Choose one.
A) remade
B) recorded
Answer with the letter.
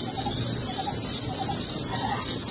B